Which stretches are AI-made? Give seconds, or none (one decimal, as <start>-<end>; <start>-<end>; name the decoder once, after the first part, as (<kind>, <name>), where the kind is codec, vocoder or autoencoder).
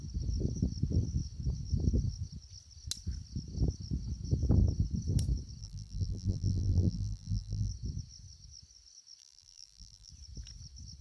5.6-7.7 (vocoder, BigVGAN v2); 9.2-10.1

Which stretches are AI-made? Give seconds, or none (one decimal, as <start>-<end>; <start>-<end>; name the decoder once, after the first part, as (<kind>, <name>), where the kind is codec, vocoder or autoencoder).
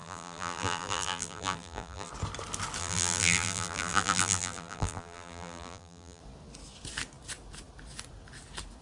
0.0-2.1 (vocoder, BigVGAN v2); 2.8-6.2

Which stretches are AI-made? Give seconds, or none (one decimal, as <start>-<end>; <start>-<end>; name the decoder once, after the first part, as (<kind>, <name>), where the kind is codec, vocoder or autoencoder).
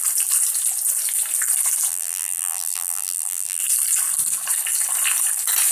1.9-3.6 (vocoder, BigVGAN v2)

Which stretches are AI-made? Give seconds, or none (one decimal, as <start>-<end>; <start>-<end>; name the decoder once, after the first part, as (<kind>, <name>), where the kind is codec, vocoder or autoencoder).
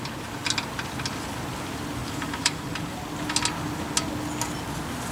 2.0-2.9 (vocoder, BigVGAN v2)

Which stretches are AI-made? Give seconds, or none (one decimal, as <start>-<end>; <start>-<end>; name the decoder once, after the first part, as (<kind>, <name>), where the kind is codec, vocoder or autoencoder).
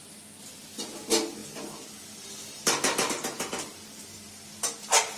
1.4-4.5 (vocoder, BigVGAN v2)